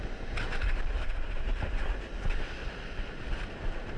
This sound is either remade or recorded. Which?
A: recorded